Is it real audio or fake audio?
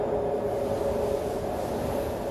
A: real